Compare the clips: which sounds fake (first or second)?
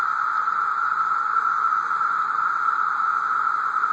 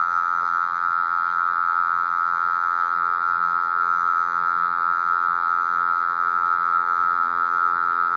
second